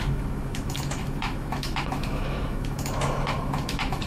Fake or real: fake